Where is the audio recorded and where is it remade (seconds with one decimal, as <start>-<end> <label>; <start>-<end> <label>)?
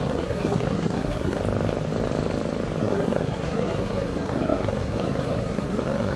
0.0-1.4 remade; 1.4-2.8 recorded; 2.8-6.2 remade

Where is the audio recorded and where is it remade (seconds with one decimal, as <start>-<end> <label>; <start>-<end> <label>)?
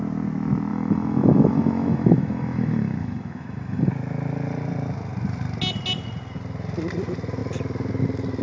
0.0-0.7 recorded; 0.7-3.9 remade; 3.9-8.4 recorded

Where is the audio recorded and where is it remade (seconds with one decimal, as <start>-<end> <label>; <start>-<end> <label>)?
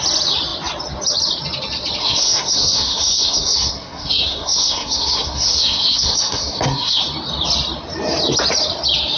0.0-2.0 recorded; 2.0-7.0 remade; 7.0-9.2 recorded